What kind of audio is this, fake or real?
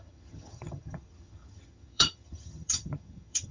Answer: fake